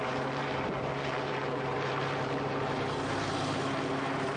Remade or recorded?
remade